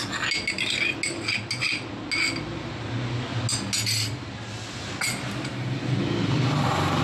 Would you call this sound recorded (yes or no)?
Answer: yes